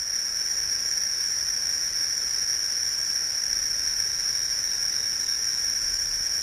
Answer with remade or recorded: recorded